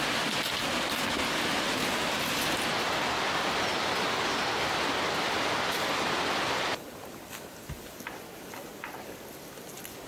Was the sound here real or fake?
real